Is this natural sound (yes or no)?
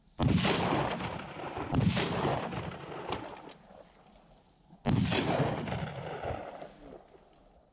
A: yes